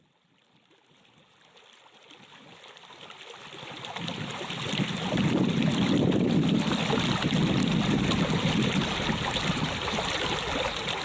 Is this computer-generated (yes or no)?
no